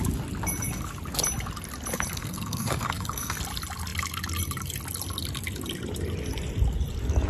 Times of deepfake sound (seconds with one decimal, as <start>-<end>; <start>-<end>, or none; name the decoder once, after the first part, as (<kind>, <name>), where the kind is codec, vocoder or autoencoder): 2.2-3.4 (codec, SNAC)